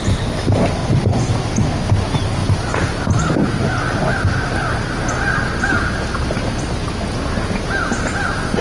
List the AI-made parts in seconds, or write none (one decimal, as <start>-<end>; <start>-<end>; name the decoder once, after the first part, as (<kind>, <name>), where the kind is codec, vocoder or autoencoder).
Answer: 0.8-1.3 (vocoder, Vocos)

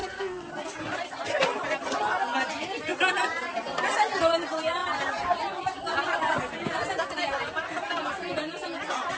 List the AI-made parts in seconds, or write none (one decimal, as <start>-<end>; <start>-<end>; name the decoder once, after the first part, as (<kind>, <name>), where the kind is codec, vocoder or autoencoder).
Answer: 0.0-0.5 (codec, SNAC)

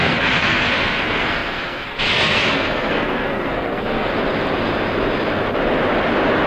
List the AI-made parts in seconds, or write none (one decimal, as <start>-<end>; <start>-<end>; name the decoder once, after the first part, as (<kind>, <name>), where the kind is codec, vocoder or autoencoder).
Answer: 0.0-4.1 (codec, SNAC)

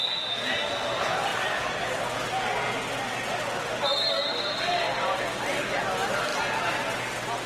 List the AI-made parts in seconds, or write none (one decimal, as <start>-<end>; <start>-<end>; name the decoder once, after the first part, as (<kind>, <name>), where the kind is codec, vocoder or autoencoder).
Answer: none

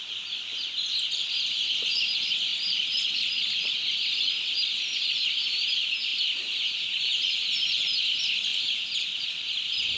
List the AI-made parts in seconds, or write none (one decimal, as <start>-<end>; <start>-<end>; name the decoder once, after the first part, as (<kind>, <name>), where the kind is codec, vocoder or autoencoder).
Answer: 2.5-3.8 (vocoder, BigVGAN v2); 8.5-9.3

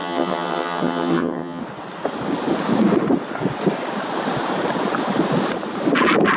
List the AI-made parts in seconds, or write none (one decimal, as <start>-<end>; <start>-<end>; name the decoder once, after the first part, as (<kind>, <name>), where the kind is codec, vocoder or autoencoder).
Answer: 0.0-1.6 (vocoder, HiFi-GAN)

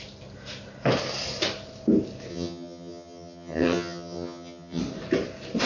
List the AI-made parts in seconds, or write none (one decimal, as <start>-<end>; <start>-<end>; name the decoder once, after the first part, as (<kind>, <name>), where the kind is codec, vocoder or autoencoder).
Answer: 2.3-4.8 (vocoder, HiFi-GAN)

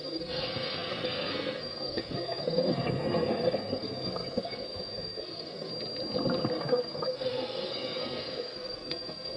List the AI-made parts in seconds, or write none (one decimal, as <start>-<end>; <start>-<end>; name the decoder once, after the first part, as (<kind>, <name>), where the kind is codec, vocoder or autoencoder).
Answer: 0.0-5.7 (codec, SNAC); 6.5-9.4